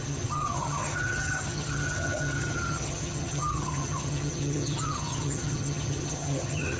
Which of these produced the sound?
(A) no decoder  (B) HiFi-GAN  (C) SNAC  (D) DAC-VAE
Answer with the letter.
B